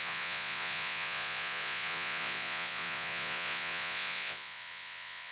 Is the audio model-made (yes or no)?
yes